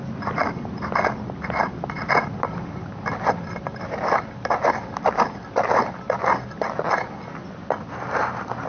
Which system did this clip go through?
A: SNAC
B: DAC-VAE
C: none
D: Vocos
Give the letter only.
C